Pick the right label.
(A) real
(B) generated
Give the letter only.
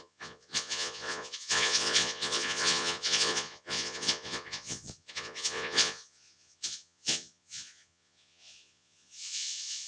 B